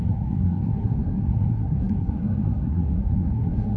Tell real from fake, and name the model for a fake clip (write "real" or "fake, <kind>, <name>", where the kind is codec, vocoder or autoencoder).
fake, codec, SNAC